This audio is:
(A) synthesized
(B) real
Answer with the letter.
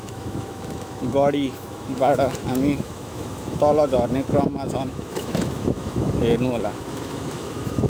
A